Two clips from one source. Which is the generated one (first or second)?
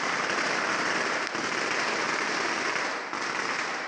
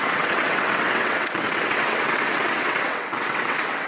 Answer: second